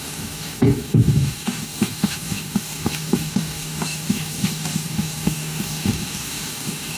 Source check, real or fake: fake